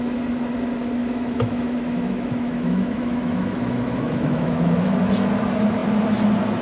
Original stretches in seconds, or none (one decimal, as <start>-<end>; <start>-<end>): 0.0-1.0; 5.0-6.6